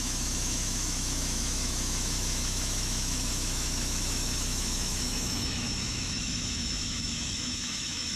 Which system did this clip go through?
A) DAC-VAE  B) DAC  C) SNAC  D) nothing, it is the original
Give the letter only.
A